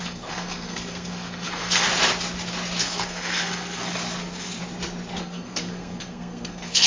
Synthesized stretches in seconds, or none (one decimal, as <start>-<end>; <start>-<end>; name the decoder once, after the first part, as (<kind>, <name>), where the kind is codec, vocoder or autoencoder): 0.0-1.9 (codec, SNAC); 2.8-4.6; 5.2-6.9